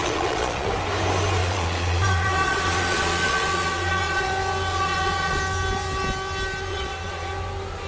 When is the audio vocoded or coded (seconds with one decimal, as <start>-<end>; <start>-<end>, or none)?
0.0-0.7; 1.4-4.3; 4.7-5.4; 6.7-7.3